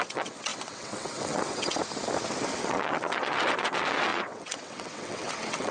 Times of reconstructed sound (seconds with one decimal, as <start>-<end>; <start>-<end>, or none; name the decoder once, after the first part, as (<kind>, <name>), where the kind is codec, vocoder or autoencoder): 0.0-1.8 (vocoder, WaveNeXt); 2.6-5.7